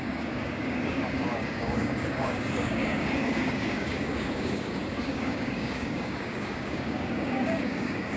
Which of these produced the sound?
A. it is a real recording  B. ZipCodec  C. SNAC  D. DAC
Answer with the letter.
D